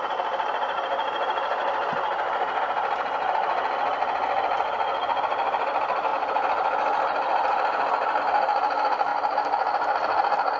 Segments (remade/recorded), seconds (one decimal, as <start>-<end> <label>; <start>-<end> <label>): 0.0-10.6 recorded